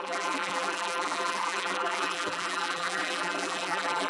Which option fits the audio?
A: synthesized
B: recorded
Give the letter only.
A